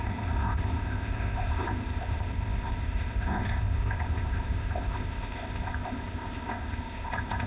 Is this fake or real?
fake